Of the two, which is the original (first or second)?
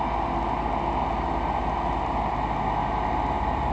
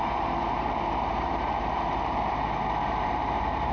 first